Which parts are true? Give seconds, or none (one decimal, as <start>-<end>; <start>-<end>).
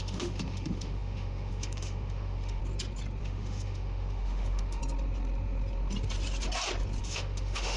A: 2.6-3.2; 4.8-7.0